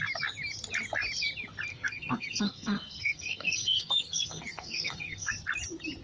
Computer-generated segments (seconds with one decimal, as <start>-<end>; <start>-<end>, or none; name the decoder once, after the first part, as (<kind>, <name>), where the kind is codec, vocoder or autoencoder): 1.7-5.3 (codec, SNAC)